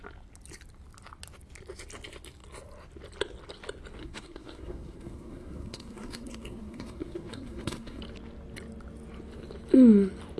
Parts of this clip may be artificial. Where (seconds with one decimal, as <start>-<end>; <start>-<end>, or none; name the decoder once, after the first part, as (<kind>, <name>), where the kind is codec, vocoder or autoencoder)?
4.0-8.0 (codec, SNAC)